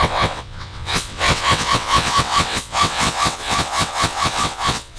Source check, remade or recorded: remade